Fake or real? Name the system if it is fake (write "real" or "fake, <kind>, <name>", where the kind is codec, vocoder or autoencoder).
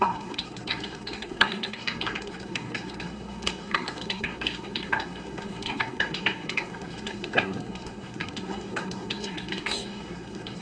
fake, codec, SNAC